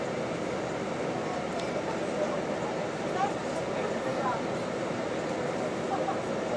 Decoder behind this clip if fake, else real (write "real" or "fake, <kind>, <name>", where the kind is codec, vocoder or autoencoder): real